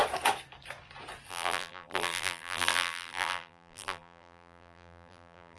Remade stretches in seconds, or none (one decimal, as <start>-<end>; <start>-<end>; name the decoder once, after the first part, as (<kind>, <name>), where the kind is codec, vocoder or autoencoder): 1.3-5.6 (vocoder, BigVGAN v2)